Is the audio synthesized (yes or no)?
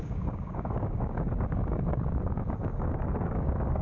yes